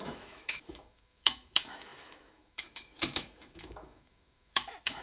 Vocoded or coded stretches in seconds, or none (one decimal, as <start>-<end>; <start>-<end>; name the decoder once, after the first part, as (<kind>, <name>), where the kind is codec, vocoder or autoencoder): 0.0-5.0 (autoencoder, DAC-VAE)